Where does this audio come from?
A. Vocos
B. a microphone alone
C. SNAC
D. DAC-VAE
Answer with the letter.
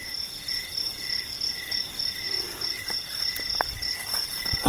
B